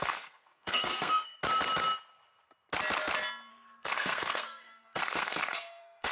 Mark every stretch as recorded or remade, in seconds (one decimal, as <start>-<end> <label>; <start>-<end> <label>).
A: 0.0-1.4 remade; 1.4-3.5 recorded; 3.5-6.1 remade